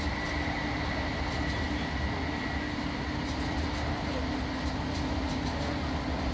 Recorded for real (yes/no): yes